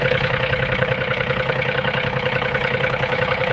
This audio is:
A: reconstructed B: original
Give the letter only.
A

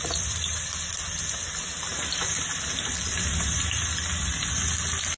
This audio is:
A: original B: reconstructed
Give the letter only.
A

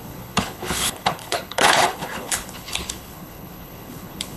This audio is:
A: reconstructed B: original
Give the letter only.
A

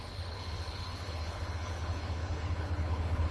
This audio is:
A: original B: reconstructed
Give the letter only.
B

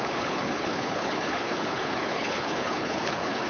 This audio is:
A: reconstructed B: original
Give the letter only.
A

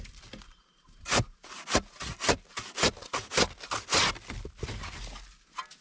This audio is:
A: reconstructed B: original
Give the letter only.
B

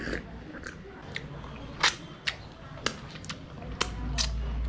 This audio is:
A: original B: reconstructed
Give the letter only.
A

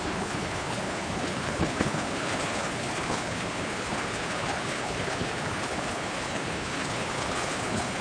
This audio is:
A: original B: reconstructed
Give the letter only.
B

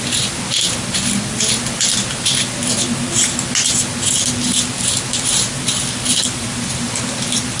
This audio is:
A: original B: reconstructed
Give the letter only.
A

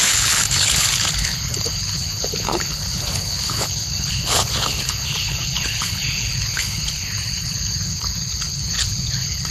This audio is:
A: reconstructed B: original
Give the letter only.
A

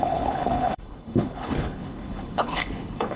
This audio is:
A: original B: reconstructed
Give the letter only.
B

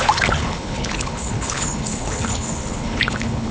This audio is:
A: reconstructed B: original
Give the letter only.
A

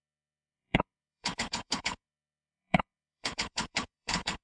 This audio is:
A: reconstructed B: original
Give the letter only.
A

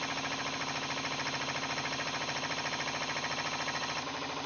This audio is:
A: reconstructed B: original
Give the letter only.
B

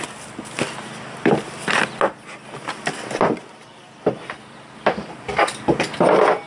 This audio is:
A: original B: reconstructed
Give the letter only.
A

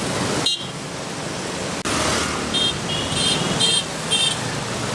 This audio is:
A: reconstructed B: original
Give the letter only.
B